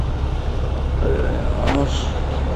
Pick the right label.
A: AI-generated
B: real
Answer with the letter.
B